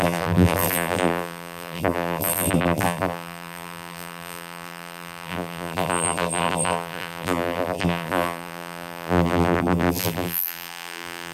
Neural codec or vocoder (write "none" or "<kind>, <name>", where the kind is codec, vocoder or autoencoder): vocoder, BigVGAN v2